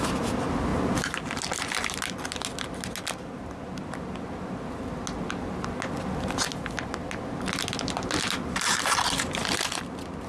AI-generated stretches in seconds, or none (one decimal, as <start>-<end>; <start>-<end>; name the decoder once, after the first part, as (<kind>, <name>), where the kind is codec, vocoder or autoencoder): none